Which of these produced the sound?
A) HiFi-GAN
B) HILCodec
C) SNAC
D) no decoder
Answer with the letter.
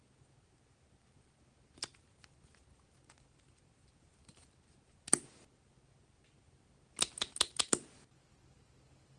D